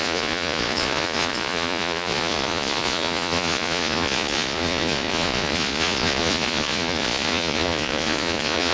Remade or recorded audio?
remade